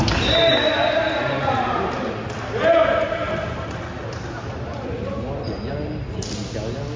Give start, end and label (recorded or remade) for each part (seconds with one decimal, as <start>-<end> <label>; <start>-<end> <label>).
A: 0.0-7.0 recorded